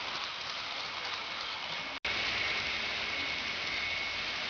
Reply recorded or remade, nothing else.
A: recorded